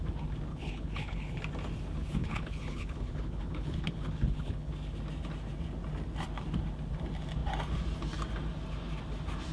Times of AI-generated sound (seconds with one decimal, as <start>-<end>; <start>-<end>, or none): 0.5-1.4; 2.2-4.7